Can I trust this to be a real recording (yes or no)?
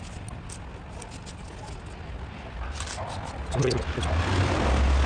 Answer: yes